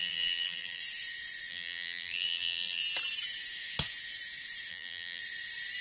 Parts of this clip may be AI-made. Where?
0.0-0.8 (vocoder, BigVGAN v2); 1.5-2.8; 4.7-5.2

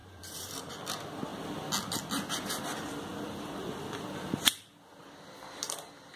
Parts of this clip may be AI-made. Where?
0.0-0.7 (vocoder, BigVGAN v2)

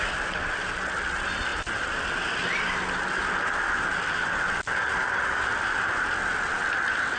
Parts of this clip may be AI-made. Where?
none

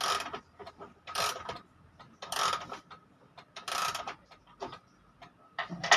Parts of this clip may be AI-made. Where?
0.6-1.4 (vocoder, BigVGAN v2); 3.8-4.4

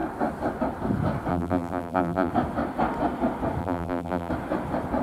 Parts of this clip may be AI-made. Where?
1.3-2.3 (vocoder, BigVGAN v2); 3.6-4.3

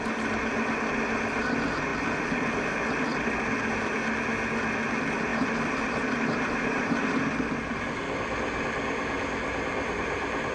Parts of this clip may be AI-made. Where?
5.3-7.2 (vocoder, BigVGAN v2)

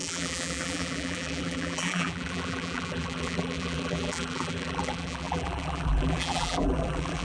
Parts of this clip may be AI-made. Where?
0.0-7.2 (vocoder, BigVGAN v2)

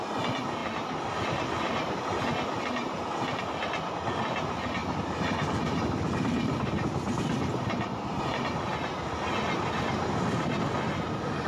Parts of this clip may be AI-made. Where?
none